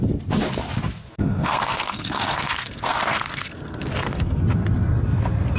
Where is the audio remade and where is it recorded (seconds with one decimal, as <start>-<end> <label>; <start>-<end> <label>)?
0.0-1.0 recorded; 1.0-4.4 remade; 4.4-5.6 recorded